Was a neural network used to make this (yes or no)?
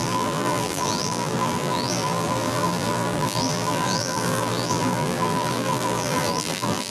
yes